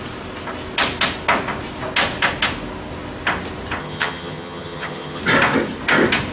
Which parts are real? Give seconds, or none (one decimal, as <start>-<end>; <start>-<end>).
0.0-3.8; 5.2-6.3